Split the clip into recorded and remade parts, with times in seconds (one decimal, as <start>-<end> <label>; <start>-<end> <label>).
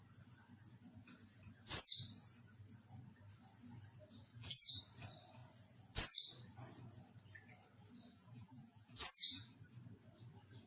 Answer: 0.0-4.3 recorded; 4.3-4.8 remade; 4.8-8.1 recorded; 8.1-9.5 remade; 9.5-10.7 recorded